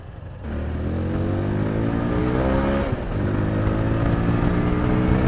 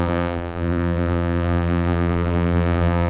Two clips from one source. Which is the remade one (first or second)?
second